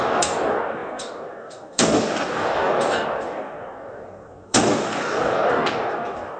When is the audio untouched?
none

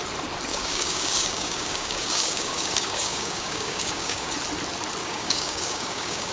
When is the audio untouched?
0.0-0.5; 4.3-5.0

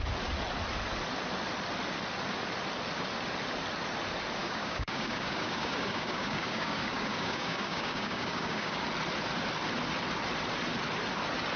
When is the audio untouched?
0.0-4.4; 8.8-11.6

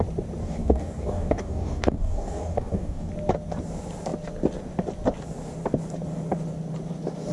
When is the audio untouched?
0.0-0.4; 3.1-7.3

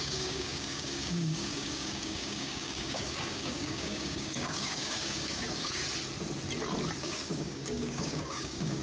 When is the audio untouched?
5.8-7.0

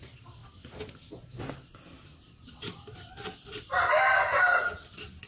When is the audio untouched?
0.0-5.3

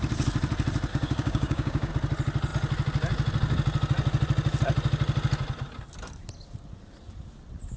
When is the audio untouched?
0.0-0.9; 1.9-7.8